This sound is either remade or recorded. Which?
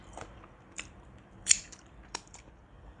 remade